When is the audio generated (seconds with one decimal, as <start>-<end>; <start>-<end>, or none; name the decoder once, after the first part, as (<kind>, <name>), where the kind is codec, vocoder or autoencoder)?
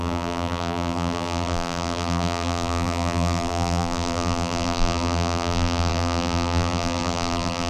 0.0-7.7 (vocoder, BigVGAN v2)